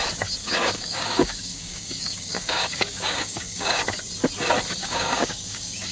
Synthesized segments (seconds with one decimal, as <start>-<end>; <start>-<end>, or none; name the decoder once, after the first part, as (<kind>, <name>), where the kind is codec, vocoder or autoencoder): 0.4-3.8 (codec, DAC); 4.8-5.9